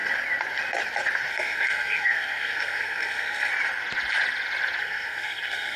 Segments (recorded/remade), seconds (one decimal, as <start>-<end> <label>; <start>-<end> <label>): 0.0-1.3 recorded; 1.3-3.5 remade; 3.5-4.8 recorded; 4.8-5.8 remade